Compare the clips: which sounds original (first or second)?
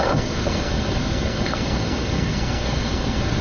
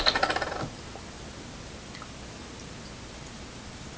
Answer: second